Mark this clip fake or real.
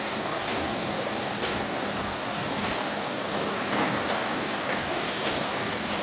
fake